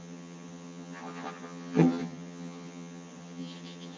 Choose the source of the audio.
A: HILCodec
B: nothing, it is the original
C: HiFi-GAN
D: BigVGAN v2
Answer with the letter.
C